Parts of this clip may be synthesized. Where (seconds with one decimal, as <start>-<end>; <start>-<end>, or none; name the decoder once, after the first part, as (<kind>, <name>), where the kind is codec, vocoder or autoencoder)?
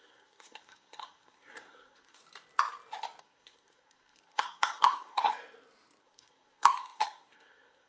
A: 0.0-2.2 (codec, SNAC); 3.2-5.3; 6.0-7.9